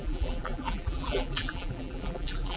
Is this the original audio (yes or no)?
no